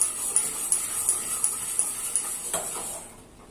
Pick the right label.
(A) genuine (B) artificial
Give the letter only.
A